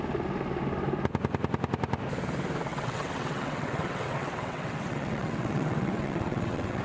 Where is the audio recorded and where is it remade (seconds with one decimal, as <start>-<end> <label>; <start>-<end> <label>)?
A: 0.0-2.7 recorded; 2.7-6.8 remade